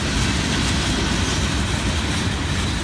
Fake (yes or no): no